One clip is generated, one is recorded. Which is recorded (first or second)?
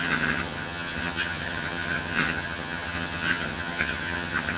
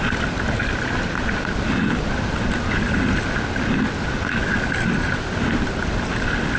second